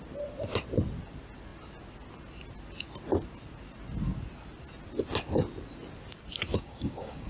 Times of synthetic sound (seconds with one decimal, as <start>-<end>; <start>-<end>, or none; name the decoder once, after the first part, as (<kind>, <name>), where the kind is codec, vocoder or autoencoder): 6.5-7.3 (codec, DAC)